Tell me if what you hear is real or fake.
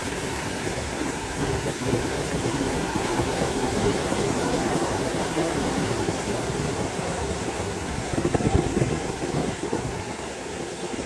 fake